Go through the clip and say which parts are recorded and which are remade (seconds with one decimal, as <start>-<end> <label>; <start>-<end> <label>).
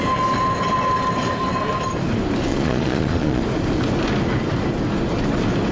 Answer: 0.0-2.5 recorded; 2.5-3.4 remade; 3.4-5.7 recorded